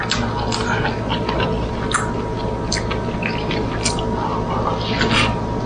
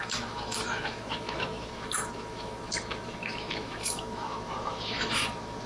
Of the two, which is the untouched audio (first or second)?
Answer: first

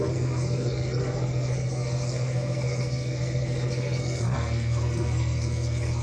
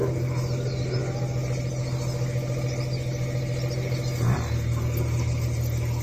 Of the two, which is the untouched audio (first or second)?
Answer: second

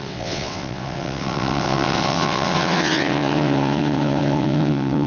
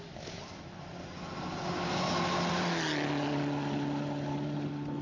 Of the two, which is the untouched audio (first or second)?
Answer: second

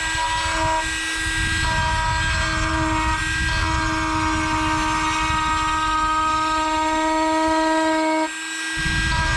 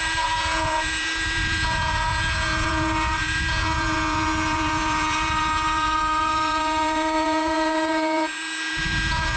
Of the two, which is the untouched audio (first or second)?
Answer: first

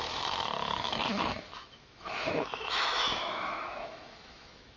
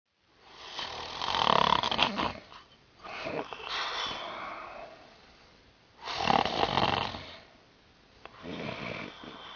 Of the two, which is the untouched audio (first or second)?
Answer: second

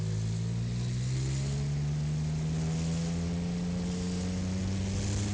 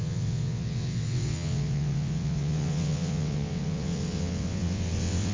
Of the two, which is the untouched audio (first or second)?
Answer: first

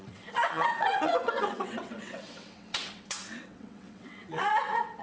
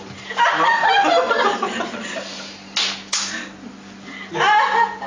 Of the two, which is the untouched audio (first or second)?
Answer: second